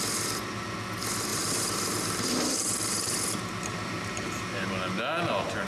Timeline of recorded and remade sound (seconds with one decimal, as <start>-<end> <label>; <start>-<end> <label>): 0.0-1.3 recorded; 1.3-4.7 remade; 4.7-5.7 recorded